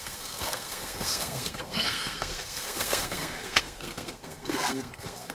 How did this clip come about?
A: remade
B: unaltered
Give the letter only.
A